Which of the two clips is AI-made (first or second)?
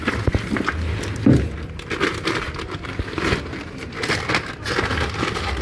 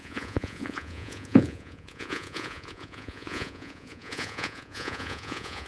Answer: second